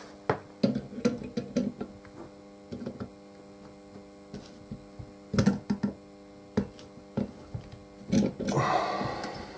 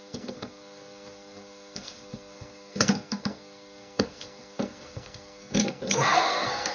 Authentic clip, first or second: first